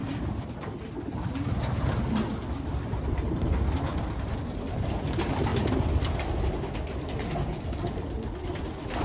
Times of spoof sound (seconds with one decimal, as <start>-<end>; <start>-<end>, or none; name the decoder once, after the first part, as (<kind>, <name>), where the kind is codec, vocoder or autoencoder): 3.9-4.9 (vocoder, BigVGAN v2); 5.5-8.5